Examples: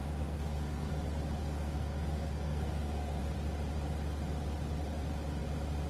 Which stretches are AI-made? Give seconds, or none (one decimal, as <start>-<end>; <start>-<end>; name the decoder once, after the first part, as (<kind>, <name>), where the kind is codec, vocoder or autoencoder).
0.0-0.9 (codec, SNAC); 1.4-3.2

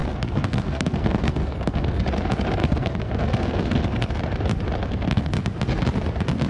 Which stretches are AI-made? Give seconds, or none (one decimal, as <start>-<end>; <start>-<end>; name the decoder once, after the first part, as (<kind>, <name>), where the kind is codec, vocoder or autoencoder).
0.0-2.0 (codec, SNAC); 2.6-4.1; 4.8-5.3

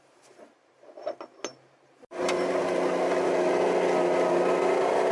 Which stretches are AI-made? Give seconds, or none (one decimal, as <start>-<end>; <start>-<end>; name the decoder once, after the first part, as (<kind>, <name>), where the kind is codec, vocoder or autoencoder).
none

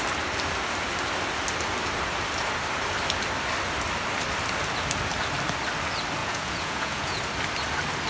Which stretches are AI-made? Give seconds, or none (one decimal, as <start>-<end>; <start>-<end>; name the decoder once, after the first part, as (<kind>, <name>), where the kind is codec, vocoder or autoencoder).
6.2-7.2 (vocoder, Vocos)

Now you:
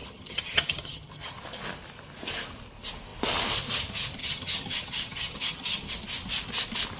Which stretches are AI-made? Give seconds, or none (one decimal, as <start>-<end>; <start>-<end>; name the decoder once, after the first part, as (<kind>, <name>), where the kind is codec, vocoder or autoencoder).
0.0-1.4 (vocoder, HiFi-GAN); 4.2-5.9

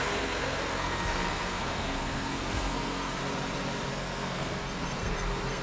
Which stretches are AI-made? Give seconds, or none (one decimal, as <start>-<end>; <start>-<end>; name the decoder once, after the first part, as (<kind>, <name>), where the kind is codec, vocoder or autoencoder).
0.0-3.2 (codec, SNAC); 3.9-5.6

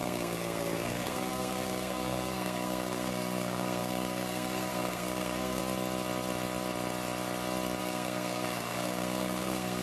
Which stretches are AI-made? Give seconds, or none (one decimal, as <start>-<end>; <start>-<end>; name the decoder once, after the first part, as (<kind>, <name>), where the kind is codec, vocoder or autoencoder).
0.0-5.6 (codec, SNAC); 7.8-9.8